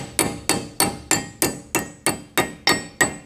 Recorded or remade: recorded